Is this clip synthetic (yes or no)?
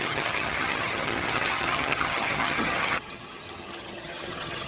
yes